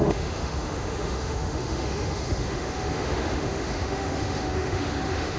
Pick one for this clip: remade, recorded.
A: remade